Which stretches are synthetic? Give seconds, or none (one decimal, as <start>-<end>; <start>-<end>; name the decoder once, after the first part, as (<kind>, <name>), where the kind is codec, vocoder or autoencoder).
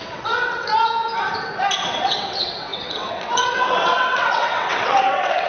0.0-0.7 (vocoder, WaveNeXt); 1.8-5.5